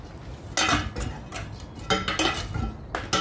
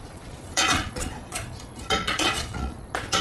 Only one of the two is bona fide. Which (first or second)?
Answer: first